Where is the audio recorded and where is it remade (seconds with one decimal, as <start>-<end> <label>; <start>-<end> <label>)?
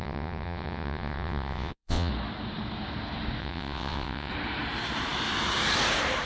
0.0-2.1 remade; 2.1-3.4 recorded; 3.4-4.3 remade; 4.3-6.3 recorded